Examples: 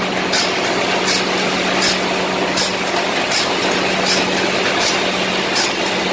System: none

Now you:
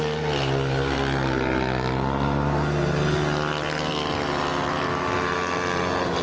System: none